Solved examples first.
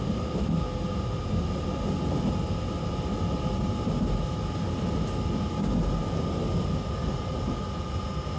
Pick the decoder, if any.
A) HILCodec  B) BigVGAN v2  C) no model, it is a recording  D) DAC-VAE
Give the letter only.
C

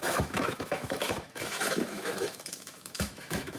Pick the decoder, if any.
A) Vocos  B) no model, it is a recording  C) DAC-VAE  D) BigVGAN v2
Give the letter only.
C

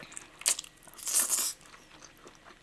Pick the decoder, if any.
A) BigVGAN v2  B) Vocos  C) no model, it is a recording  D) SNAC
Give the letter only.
C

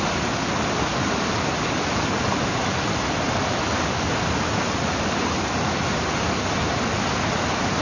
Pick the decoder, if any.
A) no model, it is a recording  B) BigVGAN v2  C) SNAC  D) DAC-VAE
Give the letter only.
A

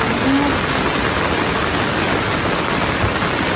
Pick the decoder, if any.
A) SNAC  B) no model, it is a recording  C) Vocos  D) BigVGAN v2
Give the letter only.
B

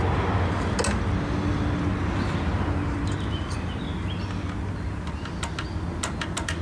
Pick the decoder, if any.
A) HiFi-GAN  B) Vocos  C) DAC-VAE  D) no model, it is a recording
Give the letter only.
D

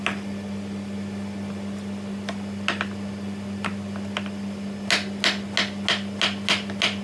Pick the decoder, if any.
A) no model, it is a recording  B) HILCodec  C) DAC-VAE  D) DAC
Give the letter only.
A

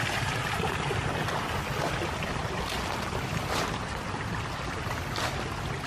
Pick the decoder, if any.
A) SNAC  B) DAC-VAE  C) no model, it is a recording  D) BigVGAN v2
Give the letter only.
C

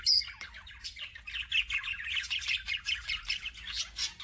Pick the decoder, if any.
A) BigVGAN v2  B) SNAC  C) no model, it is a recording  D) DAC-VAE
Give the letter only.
C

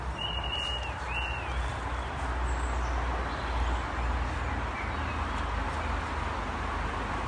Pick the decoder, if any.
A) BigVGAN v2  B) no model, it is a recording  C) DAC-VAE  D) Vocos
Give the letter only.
B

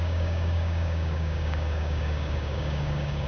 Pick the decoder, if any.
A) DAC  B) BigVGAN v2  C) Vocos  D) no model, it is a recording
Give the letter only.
A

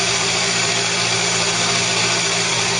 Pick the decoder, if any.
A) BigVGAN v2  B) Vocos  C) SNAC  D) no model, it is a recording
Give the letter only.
A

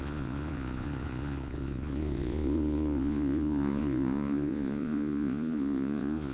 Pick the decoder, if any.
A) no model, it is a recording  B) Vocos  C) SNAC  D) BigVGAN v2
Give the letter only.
B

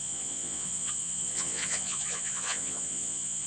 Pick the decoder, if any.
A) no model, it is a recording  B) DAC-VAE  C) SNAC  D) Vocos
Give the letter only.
D